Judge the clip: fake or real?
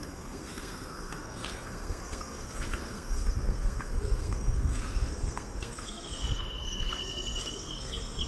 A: fake